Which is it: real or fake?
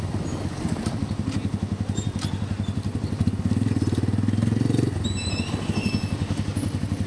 real